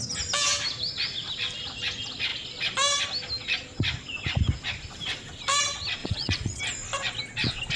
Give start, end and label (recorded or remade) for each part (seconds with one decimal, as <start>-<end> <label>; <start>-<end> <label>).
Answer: 0.0-6.0 recorded; 6.0-6.6 remade; 6.6-7.8 recorded